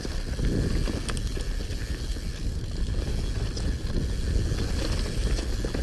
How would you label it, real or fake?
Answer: real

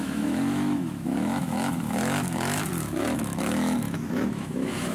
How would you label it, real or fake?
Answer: fake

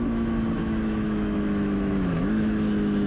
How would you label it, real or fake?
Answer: fake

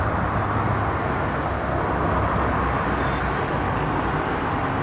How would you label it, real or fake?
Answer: real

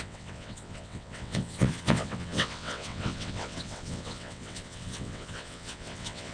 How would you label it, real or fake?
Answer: fake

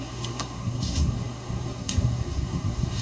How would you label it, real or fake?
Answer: fake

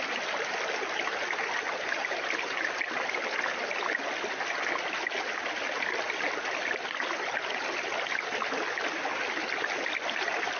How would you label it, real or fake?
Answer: real